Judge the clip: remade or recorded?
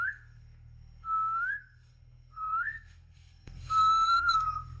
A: remade